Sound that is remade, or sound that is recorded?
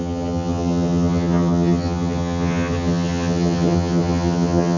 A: remade